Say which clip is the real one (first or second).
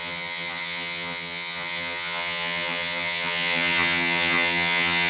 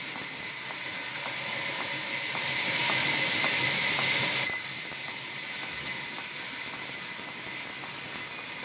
second